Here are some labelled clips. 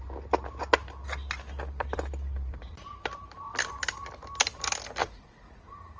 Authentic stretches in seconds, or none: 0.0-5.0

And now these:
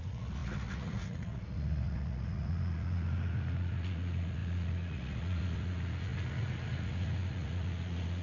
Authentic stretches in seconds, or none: none

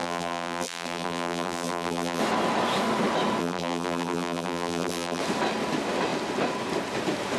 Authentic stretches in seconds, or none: 2.2-3.4; 5.2-7.4